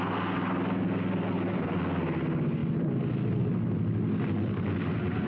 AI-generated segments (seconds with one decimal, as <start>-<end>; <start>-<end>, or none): none